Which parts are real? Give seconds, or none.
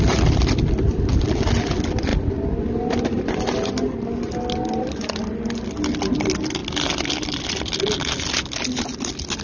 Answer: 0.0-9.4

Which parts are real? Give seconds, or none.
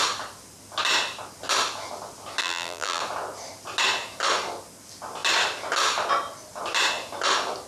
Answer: 0.0-2.4; 3.0-7.7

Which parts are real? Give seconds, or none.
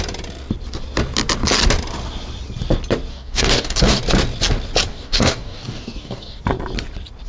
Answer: 0.0-3.1; 4.0-4.9; 6.4-7.3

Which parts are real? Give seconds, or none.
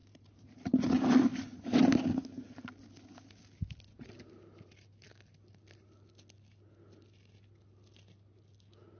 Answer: 0.9-1.3; 2.0-9.0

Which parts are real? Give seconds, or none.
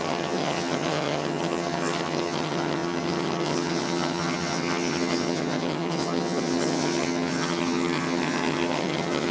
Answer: none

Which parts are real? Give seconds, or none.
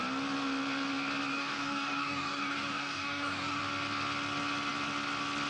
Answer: 0.0-1.3; 3.6-5.5